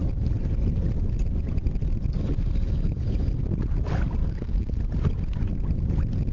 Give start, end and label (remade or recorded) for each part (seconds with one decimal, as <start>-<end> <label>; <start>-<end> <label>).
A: 0.0-4.2 recorded; 4.2-4.8 remade; 4.8-6.3 recorded